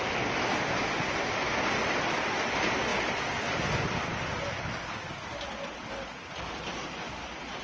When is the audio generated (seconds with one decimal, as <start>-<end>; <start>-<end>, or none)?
none